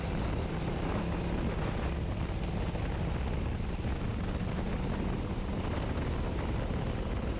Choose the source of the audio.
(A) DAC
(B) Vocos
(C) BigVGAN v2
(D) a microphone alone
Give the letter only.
D